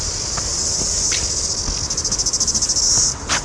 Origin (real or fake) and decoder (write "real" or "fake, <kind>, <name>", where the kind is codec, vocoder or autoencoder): real